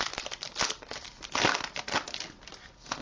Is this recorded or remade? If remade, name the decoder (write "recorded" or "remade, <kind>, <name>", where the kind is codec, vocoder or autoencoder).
recorded